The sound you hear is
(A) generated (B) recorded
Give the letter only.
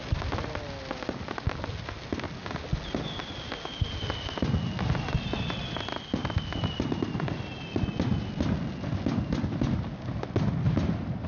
B